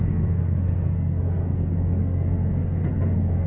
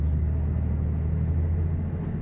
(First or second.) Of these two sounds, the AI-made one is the first